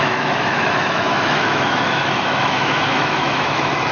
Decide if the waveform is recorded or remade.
remade